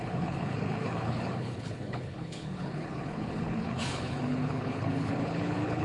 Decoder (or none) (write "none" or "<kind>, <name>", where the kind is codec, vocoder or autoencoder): codec, HILCodec